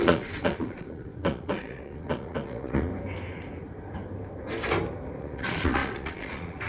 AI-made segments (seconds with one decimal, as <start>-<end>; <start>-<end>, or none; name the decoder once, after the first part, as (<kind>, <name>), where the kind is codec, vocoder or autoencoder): 0.0-2.9 (vocoder, Vocos); 5.2-6.7